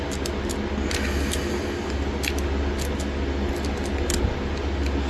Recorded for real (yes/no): yes